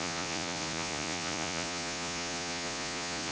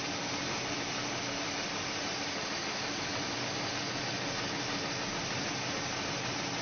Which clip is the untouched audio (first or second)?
second